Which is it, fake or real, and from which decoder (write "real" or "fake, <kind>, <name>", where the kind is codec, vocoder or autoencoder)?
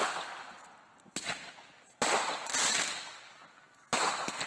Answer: real